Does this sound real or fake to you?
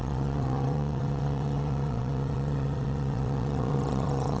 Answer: fake